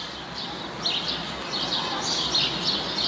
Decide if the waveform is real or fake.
real